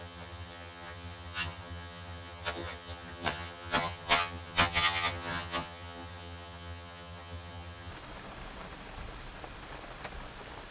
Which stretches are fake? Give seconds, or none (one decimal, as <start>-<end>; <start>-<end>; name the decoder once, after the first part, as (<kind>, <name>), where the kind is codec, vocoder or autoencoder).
0.0-7.9 (vocoder, HiFi-GAN)